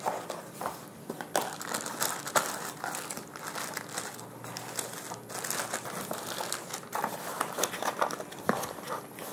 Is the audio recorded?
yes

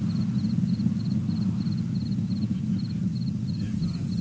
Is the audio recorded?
yes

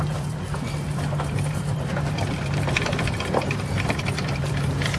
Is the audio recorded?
no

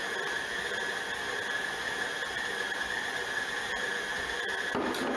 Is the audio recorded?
yes